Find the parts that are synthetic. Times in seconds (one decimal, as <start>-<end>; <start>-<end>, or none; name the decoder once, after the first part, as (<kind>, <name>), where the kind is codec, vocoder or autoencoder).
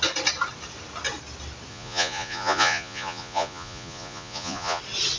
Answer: 1.7-4.8 (vocoder, Vocos)